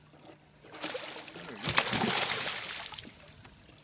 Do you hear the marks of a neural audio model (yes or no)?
no